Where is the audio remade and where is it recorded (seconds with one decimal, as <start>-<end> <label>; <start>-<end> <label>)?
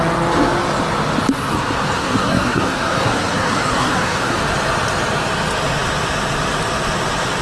0.0-2.0 recorded; 2.0-4.4 remade; 4.4-7.4 recorded